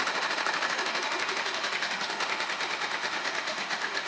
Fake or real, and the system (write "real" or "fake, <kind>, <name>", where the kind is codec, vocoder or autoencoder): fake, autoencoder, DAC-VAE